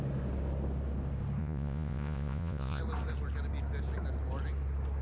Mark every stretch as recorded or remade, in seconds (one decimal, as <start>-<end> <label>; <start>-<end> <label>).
0.0-1.4 recorded; 1.4-2.8 remade; 2.8-5.0 recorded